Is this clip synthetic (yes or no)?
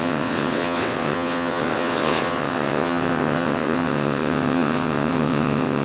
yes